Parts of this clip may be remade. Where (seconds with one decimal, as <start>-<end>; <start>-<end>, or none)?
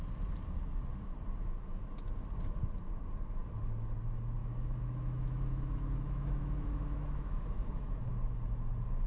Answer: 4.4-8.1